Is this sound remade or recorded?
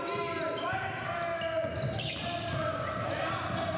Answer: recorded